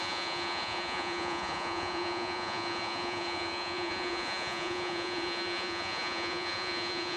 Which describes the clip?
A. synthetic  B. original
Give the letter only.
A